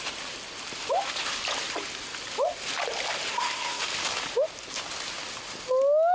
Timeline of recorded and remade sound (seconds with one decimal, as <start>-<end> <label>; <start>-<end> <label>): 0.0-3.3 recorded; 3.3-3.8 remade; 3.8-6.1 recorded